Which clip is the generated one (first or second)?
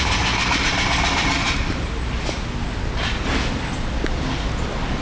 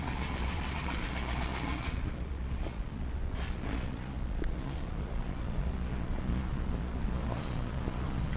second